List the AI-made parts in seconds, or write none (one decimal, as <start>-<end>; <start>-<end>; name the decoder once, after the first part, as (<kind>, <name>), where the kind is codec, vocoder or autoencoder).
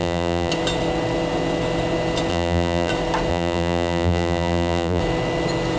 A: 0.0-0.5 (vocoder, BigVGAN v2); 2.3-2.9; 3.3-5.0